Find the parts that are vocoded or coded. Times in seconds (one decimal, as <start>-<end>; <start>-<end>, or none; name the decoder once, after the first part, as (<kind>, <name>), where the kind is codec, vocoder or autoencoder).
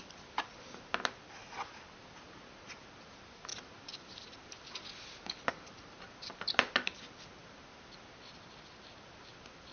none